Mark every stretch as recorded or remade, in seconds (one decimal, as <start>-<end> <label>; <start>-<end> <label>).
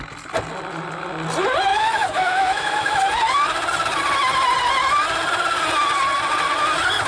0.0-1.7 recorded; 1.7-3.0 remade; 3.0-7.1 recorded